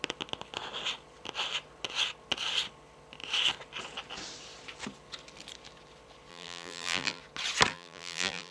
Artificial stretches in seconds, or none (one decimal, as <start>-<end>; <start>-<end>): 6.3-7.2; 7.7-8.5